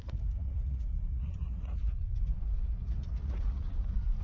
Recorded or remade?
remade